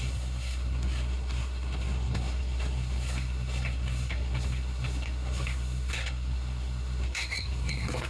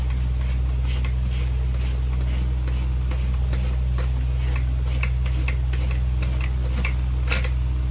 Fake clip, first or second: first